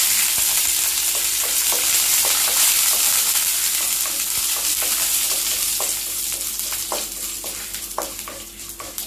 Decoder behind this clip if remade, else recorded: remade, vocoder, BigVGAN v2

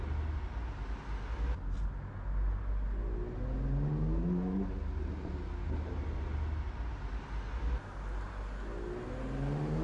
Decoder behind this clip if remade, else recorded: recorded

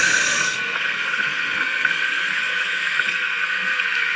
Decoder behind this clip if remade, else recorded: remade, codec, SNAC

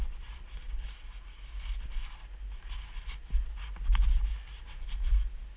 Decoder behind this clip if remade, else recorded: recorded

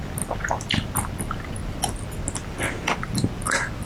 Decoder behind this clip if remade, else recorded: recorded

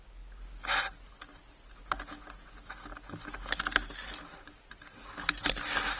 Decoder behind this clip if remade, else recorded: recorded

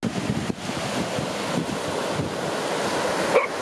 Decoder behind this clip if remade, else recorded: recorded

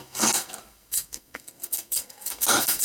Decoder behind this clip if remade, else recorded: remade, codec, SNAC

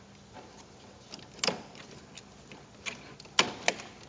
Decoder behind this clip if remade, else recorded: recorded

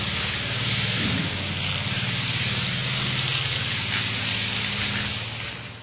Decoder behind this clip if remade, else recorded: recorded